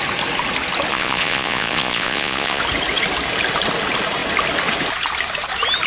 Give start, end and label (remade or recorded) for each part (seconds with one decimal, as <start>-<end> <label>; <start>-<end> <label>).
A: 0.0-0.9 recorded; 0.9-2.6 remade; 2.6-5.9 recorded